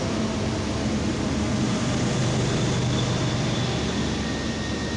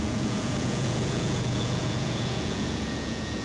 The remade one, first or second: second